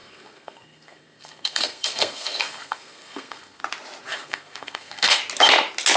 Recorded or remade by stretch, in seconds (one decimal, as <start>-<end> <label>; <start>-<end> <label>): 0.0-3.6 remade; 3.6-4.1 recorded; 4.1-5.2 remade; 5.2-6.0 recorded